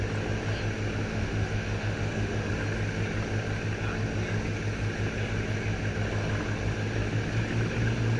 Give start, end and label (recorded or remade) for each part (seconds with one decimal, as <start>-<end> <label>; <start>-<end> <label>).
0.0-1.1 recorded; 1.1-2.5 remade; 2.5-8.2 recorded

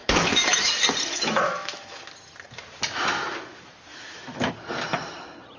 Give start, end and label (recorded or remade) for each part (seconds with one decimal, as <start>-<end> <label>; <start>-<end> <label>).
0.0-0.7 remade; 0.7-1.1 recorded; 1.1-2.0 remade; 2.0-3.9 recorded; 3.9-4.5 remade; 4.5-5.6 recorded

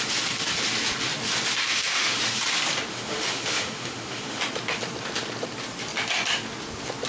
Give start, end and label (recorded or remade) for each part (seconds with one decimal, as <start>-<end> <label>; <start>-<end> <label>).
0.0-1.7 recorded; 1.7-2.4 remade; 2.4-2.9 recorded; 2.9-4.4 remade; 4.4-7.1 recorded

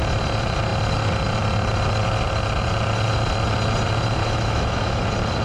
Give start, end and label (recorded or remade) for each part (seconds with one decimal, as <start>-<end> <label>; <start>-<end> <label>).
0.0-4.2 recorded; 4.2-5.0 remade; 5.0-5.4 recorded

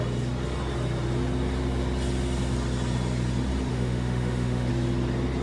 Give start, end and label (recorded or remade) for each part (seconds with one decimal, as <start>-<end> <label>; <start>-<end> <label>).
0.0-3.7 recorded; 3.7-4.7 remade; 4.7-5.4 recorded